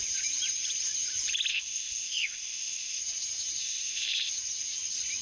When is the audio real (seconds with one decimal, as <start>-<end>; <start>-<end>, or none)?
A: 0.0-1.5; 3.0-3.6; 4.3-5.2